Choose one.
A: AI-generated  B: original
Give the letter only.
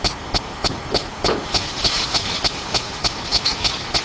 B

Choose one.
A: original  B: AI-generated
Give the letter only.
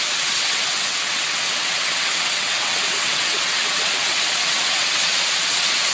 B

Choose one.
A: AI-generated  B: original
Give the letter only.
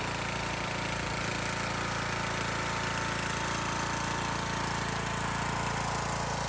B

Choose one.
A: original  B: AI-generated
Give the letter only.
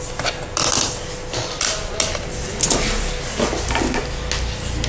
A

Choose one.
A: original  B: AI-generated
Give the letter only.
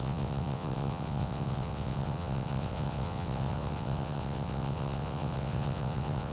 B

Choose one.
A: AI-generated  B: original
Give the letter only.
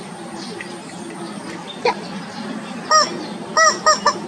B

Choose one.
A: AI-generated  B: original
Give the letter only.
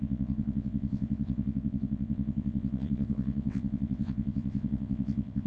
A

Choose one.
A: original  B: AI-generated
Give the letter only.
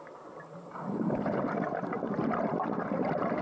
A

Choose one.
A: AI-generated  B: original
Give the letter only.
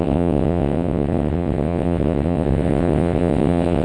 A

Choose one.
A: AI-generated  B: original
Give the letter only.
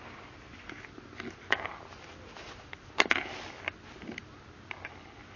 B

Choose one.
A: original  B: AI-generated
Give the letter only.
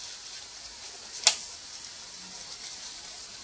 A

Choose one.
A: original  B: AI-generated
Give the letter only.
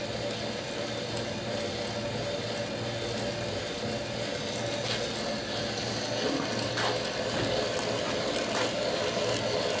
A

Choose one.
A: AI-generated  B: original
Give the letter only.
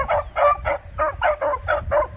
B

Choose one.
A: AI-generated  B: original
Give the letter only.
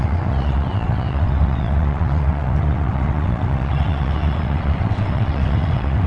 A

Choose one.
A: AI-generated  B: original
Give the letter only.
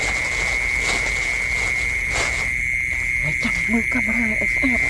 B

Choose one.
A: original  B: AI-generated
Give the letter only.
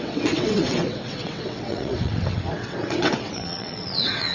B